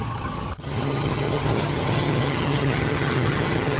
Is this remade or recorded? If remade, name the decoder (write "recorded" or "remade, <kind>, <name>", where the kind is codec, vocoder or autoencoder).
remade, vocoder, HiFi-GAN